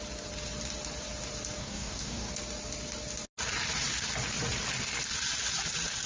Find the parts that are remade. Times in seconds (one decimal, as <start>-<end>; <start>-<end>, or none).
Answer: 1.6-2.3